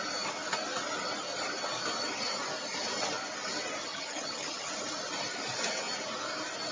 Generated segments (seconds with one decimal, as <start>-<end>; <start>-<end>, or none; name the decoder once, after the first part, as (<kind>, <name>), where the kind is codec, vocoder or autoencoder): 3.8-4.7 (vocoder, HiFi-GAN)